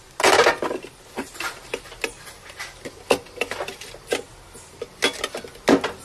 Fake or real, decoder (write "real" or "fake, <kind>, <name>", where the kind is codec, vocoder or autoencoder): real